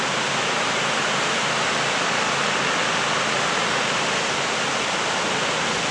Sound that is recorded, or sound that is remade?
recorded